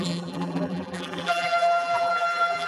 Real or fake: fake